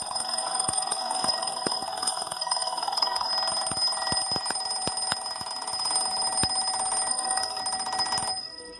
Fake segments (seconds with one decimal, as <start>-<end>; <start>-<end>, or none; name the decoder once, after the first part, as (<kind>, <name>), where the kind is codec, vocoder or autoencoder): 0.0-3.3 (codec, SNAC); 7.1-7.6; 8.4-8.8